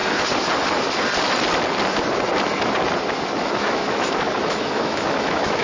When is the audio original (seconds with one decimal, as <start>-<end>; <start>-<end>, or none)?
0.0-3.4